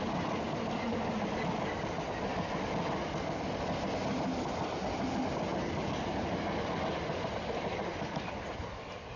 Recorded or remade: recorded